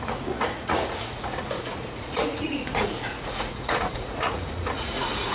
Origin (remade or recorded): remade